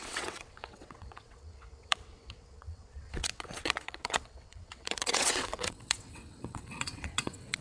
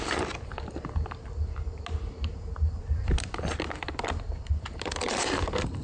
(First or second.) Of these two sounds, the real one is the second